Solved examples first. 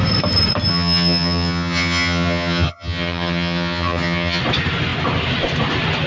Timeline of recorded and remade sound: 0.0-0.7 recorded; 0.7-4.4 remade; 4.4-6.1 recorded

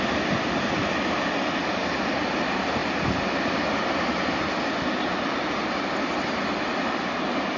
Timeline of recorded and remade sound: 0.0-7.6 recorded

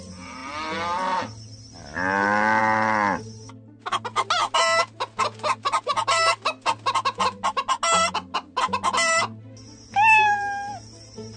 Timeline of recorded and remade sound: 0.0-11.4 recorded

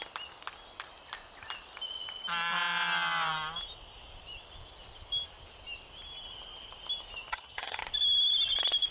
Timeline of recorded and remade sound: 0.0-7.3 recorded; 7.3-7.8 remade; 7.8-8.9 recorded